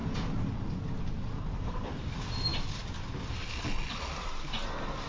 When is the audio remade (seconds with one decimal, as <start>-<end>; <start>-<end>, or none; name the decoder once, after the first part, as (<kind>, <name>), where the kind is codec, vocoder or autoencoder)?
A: none